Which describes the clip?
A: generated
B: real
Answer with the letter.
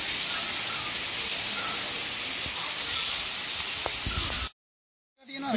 B